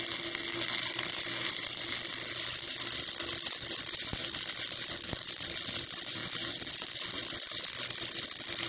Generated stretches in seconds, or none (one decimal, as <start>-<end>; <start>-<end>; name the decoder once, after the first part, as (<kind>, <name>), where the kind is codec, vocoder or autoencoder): none